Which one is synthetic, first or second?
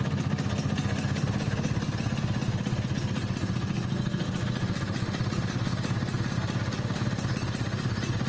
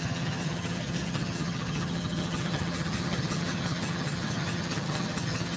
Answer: second